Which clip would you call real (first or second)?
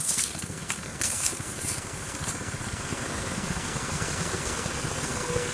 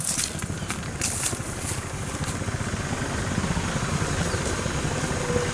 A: second